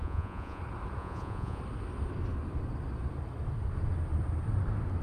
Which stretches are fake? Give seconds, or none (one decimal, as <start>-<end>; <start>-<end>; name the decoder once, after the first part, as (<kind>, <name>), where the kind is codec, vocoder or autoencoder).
0.0-0.6 (vocoder, Vocos); 1.0-1.6